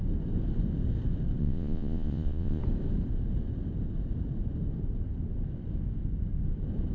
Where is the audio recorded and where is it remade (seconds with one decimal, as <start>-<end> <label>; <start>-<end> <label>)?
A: 0.0-1.4 recorded; 1.4-2.6 remade; 2.6-6.9 recorded